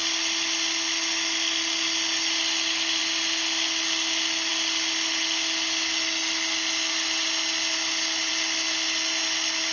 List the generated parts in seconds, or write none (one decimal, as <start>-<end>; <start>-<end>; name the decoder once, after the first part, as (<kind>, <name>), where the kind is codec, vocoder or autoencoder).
none